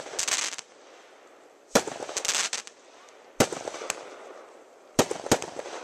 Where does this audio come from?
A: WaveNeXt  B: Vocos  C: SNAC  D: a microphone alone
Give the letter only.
D